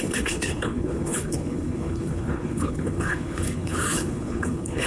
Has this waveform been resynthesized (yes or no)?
yes